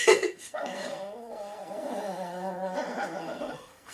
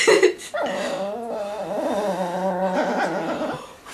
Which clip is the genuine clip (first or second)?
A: second